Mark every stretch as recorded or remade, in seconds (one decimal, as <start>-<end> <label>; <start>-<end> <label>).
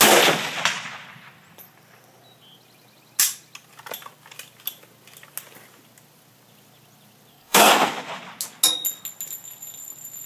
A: 0.0-7.3 recorded; 7.3-7.9 remade; 7.9-10.3 recorded